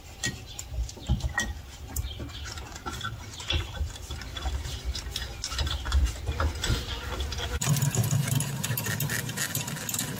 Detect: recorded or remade recorded